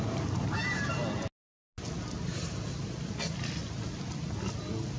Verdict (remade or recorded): recorded